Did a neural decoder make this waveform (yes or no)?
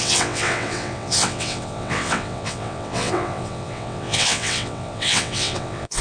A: yes